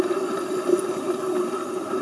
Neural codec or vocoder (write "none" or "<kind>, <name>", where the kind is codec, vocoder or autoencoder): none